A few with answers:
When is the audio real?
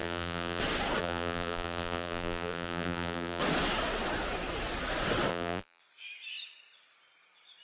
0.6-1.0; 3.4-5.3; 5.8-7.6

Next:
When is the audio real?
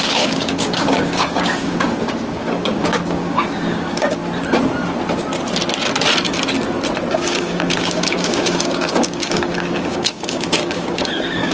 4.2-7.1